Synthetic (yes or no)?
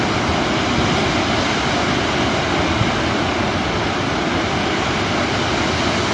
no